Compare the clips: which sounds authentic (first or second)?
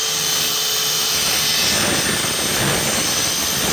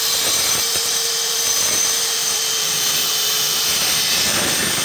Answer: first